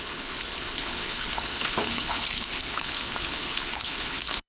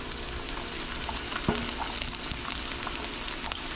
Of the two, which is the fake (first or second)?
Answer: first